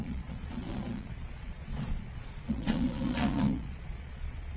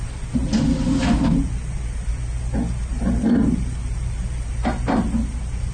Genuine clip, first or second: second